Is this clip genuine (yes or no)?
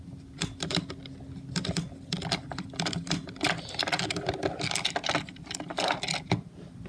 yes